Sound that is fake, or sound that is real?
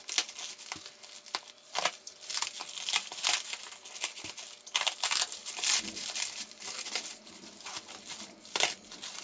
real